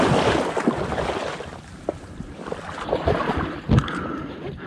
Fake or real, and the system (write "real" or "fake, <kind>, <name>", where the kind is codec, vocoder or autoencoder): real